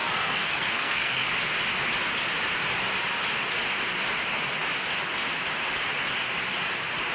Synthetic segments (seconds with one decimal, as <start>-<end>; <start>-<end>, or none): 0.0-1.3